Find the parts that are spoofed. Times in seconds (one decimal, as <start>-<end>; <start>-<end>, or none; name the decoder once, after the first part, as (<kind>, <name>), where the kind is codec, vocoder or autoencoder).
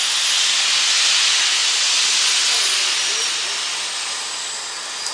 none